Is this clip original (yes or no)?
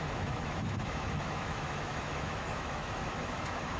no